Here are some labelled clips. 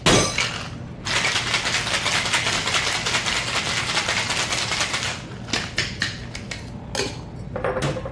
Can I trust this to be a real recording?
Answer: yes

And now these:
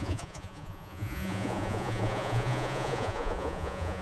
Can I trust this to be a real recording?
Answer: no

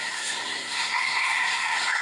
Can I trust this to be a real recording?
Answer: no